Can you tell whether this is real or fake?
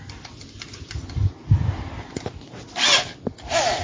real